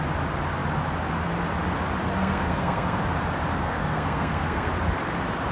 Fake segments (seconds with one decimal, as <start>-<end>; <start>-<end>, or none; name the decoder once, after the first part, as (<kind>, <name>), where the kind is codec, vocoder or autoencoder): 2.0-3.0 (codec, SNAC); 3.6-4.7